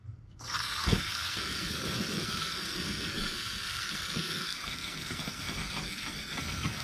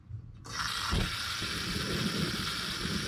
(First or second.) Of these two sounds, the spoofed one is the first